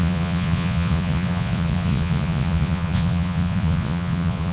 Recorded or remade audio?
remade